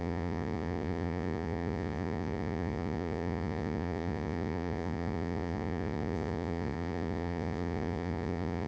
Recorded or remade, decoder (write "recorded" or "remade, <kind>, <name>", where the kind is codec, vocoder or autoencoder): remade, vocoder, Vocos